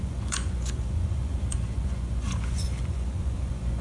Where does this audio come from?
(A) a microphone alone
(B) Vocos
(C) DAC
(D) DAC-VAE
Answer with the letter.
B